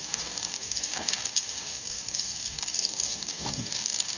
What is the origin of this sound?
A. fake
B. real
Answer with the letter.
A